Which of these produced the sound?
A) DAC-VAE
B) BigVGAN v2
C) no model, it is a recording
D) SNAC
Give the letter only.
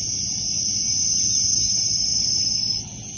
C